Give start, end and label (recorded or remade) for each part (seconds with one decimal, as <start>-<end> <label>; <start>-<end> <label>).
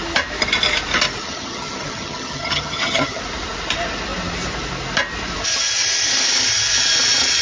0.0-1.2 recorded; 1.2-3.2 remade; 3.2-7.4 recorded